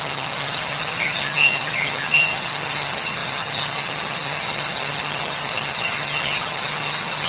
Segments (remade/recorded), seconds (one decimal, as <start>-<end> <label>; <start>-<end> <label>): 0.0-7.3 remade